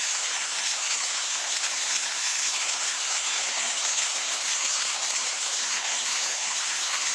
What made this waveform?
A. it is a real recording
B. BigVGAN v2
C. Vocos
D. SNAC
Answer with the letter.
D